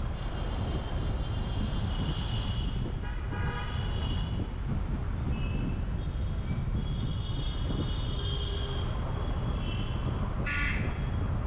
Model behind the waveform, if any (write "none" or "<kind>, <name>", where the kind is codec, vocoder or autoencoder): none